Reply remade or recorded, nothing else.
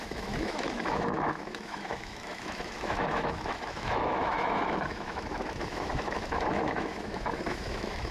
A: remade